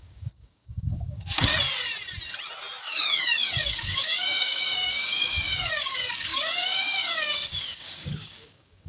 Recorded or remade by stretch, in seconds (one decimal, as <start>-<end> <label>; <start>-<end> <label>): 0.0-1.5 remade; 1.5-2.8 recorded; 2.8-8.9 remade